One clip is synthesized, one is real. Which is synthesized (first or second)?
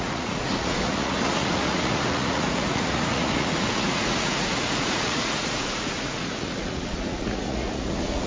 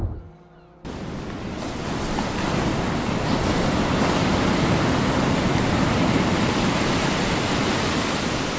first